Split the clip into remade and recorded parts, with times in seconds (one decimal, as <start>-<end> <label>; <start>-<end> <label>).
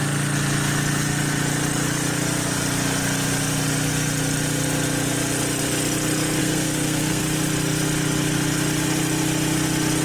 0.0-6.4 recorded; 6.4-7.2 remade; 7.2-10.0 recorded